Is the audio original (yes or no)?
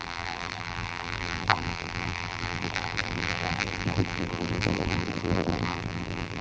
no